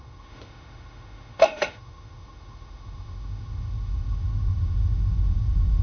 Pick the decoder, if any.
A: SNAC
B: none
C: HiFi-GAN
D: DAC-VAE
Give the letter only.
D